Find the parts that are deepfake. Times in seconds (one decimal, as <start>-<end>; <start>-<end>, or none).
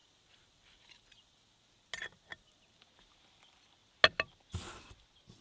none